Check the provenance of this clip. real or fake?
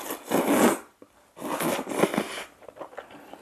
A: real